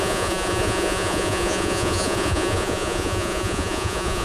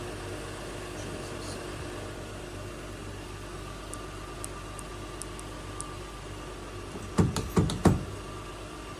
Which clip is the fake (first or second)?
first